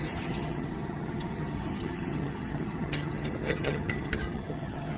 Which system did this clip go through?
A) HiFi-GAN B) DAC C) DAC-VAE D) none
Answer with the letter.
A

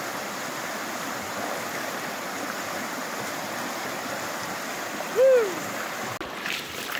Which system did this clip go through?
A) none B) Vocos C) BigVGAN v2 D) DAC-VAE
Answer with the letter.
A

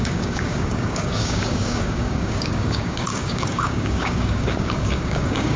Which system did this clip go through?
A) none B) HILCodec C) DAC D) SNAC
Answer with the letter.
C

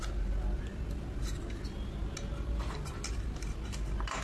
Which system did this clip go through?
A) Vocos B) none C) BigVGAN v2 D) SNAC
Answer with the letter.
B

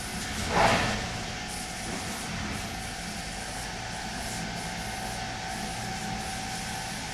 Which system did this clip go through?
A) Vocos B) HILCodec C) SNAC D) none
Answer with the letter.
D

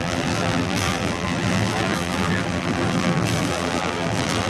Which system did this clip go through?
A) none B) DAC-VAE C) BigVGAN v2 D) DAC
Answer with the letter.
C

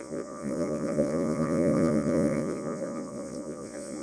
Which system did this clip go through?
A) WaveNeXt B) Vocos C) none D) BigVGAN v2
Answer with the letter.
B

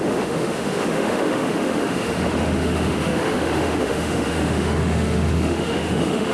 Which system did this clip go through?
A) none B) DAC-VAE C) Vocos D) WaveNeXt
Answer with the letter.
B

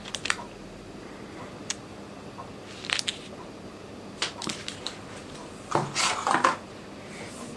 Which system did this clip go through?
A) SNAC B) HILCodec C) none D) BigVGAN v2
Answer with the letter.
D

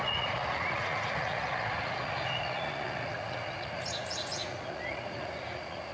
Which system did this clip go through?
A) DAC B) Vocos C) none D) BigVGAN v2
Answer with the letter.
B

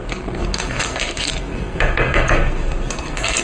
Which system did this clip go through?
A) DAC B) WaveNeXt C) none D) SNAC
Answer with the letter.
D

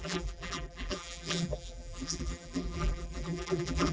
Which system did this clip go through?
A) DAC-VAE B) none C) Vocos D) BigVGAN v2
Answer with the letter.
D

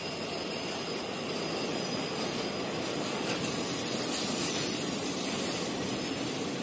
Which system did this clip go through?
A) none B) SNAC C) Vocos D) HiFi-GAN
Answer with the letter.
A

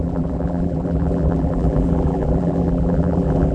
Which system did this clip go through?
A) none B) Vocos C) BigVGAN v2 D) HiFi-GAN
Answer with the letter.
C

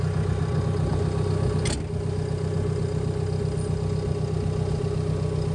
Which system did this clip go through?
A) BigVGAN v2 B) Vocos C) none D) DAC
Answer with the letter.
C